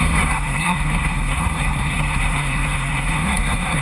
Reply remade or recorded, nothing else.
remade